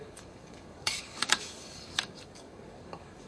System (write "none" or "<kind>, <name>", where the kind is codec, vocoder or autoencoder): codec, DAC